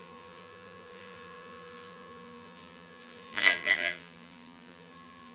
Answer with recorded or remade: remade